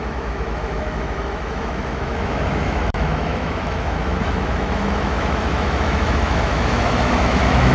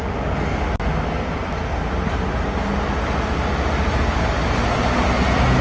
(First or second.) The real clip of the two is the second